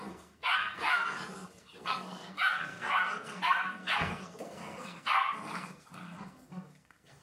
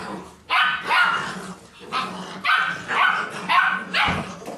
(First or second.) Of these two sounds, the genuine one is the second